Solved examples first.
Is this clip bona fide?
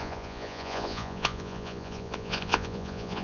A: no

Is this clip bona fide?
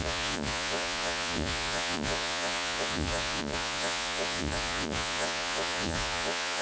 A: no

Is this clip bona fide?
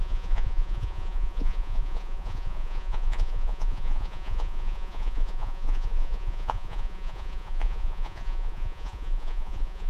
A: no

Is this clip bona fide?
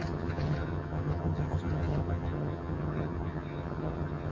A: no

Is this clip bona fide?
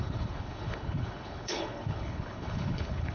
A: no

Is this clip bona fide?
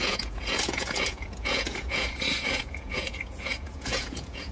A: no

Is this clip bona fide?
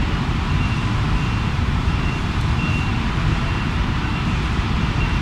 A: no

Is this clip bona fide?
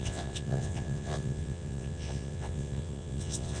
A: no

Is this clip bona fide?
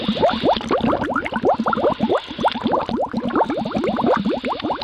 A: yes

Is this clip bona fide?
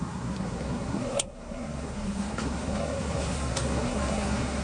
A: no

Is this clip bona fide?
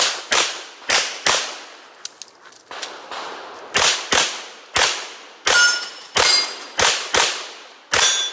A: yes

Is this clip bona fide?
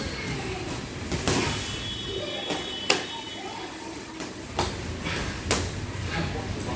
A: yes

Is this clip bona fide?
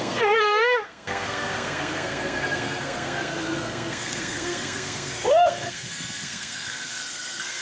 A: no